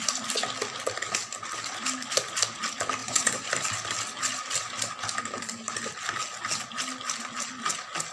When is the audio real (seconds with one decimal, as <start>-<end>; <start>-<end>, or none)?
0.0-3.0; 3.5-8.1